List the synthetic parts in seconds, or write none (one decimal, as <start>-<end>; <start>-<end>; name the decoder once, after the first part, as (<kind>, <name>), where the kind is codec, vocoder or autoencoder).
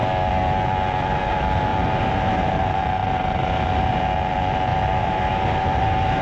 1.7-2.5 (vocoder, BigVGAN v2); 4.7-6.2